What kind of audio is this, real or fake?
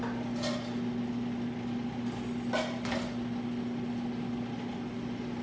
real